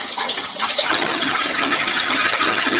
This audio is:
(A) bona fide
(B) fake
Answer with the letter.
B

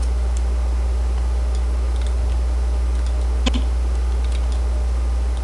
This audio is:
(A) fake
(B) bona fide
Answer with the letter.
B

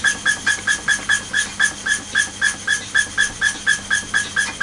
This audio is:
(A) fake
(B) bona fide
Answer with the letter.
B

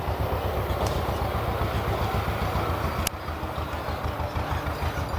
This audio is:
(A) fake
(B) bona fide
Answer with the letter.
B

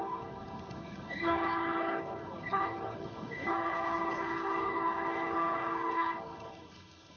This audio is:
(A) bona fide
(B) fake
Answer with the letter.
B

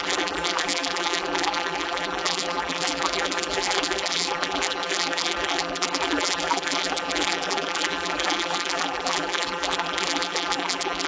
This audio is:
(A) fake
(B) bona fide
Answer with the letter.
A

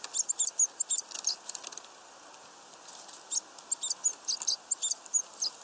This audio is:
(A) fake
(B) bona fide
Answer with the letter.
B